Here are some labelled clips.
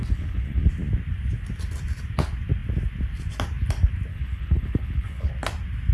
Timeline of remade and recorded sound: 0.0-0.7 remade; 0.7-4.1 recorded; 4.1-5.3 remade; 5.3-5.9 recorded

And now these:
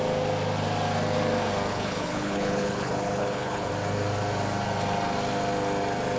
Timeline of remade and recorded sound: 0.0-1.7 recorded; 1.7-3.7 remade; 3.7-6.2 recorded

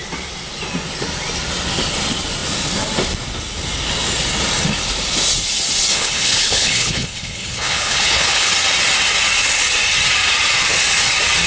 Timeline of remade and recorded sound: 0.0-5.9 recorded; 5.9-8.5 remade; 8.5-11.5 recorded

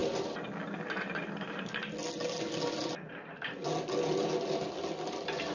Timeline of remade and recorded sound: 0.0-5.5 recorded

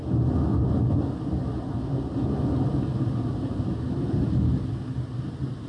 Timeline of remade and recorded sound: 0.0-5.7 recorded

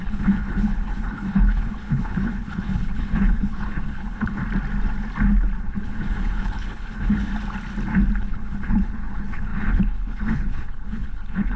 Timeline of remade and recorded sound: 0.0-4.4 remade; 4.4-5.6 recorded; 5.6-7.3 remade; 7.3-8.2 recorded; 8.2-11.6 remade